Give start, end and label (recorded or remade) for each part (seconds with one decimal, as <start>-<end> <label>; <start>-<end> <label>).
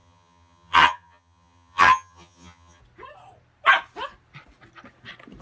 0.0-2.8 remade; 2.8-5.4 recorded